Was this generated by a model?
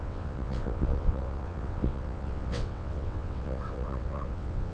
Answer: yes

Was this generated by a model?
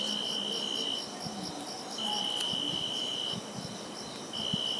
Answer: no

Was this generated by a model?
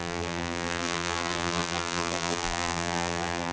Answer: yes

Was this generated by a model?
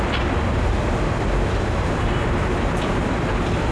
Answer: no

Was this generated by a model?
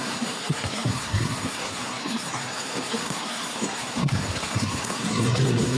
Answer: yes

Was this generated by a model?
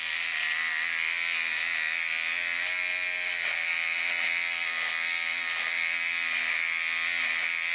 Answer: no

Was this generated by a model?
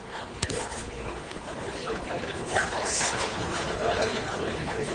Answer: yes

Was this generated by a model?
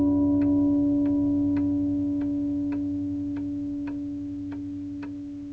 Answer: no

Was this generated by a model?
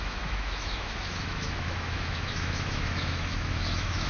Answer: yes